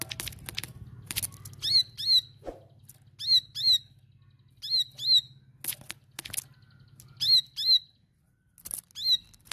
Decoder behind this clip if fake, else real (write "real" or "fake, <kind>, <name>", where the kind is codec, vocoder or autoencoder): real